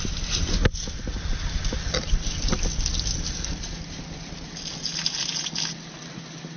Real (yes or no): yes